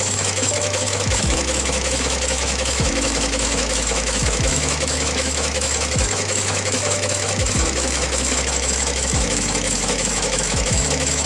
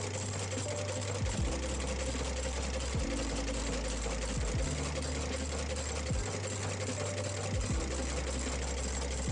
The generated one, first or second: first